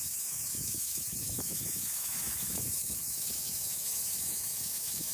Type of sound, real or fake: fake